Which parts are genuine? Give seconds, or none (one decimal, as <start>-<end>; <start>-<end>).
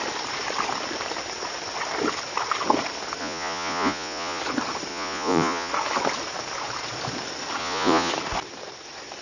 0.0-3.2; 4.4-4.9; 5.7-7.6; 8.1-9.2